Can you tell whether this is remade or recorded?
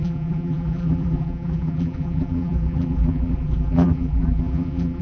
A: remade